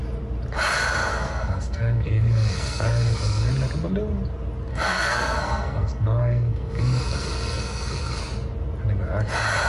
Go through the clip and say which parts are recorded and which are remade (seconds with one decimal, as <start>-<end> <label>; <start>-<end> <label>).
0.0-1.1 recorded; 1.1-3.5 remade; 3.5-4.7 recorded; 4.7-8.2 remade; 8.2-9.7 recorded

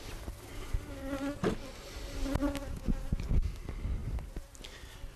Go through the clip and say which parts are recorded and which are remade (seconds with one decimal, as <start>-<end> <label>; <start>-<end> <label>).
0.0-5.2 recorded

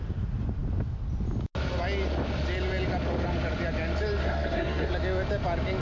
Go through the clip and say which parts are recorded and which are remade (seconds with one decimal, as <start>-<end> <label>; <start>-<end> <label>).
0.0-4.2 recorded; 4.2-4.9 remade; 4.9-5.8 recorded

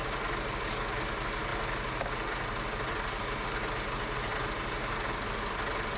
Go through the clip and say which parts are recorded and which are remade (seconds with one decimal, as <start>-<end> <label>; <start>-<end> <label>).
0.0-6.0 recorded

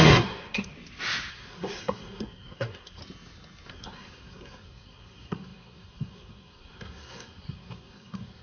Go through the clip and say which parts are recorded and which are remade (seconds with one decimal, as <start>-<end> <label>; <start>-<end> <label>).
0.0-0.7 remade; 0.7-1.3 recorded; 1.3-3.0 remade; 3.0-3.7 recorded; 3.7-8.4 remade

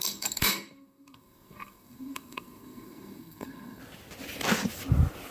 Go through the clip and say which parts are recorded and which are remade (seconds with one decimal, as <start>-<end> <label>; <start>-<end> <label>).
0.0-3.8 remade; 3.8-5.3 recorded

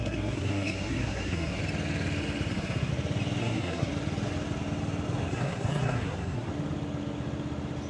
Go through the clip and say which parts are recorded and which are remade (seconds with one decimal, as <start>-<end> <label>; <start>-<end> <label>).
0.0-1.6 remade; 1.6-2.5 recorded; 2.5-2.9 remade; 2.9-3.4 recorded; 3.4-3.9 remade; 3.9-5.3 recorded; 5.3-6.5 remade; 6.5-7.9 recorded